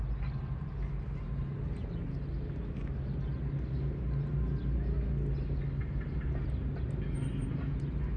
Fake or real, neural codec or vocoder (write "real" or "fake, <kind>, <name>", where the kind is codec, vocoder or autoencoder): real